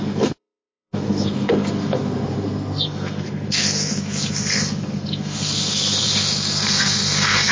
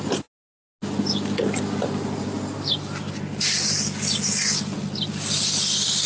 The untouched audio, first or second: second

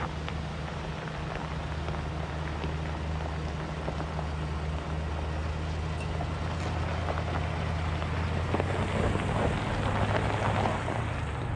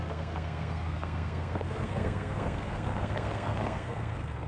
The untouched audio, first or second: first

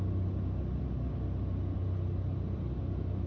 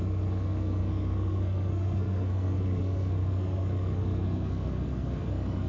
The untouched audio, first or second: first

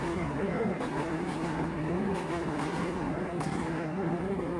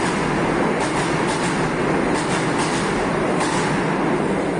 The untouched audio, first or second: second